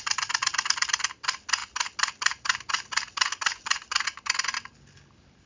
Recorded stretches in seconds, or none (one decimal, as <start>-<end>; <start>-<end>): 0.0-5.5